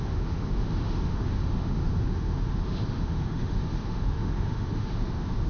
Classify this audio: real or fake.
fake